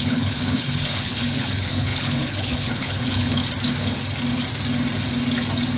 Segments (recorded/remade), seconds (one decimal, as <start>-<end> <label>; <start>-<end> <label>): 0.0-3.4 remade; 3.4-5.8 recorded